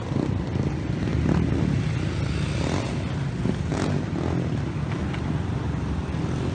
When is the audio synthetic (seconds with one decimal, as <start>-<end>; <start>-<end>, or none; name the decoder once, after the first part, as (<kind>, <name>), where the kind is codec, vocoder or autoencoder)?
none